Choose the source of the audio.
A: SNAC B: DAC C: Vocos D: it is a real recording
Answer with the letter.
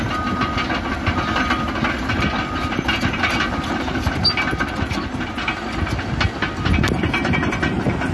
D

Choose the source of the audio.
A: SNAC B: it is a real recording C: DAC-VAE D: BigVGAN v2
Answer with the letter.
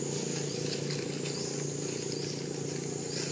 B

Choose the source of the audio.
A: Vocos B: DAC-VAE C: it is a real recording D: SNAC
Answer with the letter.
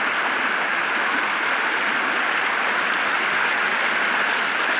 C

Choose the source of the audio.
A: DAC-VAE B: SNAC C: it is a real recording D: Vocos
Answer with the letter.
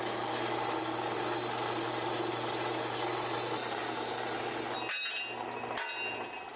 C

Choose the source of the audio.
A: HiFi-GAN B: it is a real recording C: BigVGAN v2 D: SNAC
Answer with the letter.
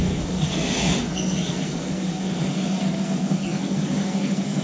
D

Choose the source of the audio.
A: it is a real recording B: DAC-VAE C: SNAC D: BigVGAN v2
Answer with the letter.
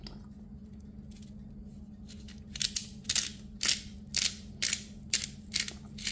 A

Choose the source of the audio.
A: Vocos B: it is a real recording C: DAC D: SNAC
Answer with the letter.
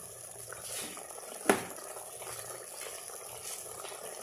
B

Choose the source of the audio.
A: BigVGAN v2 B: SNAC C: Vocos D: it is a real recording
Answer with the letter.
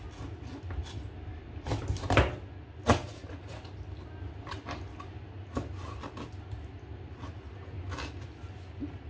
D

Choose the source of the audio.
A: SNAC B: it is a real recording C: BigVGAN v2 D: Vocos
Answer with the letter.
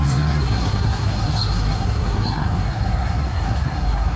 A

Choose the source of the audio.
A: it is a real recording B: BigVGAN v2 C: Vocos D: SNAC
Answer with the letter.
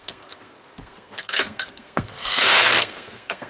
D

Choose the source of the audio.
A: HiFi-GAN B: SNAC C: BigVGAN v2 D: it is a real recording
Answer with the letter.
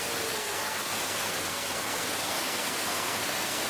B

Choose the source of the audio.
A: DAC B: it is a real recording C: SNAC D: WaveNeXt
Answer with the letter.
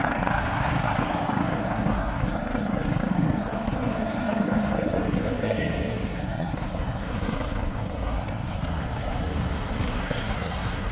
C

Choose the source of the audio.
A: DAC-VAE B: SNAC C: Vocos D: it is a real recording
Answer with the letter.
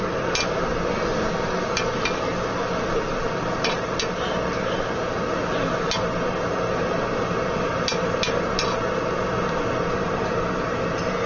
D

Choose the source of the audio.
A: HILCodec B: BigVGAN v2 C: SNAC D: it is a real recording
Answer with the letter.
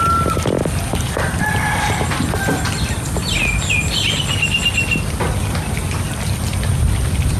D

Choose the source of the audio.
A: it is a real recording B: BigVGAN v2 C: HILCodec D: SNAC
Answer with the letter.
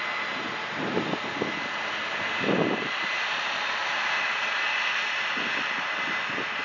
A